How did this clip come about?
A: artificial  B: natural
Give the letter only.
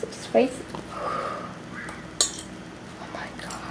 B